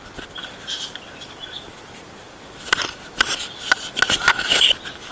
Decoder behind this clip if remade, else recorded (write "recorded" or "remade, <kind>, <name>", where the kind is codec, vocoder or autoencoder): recorded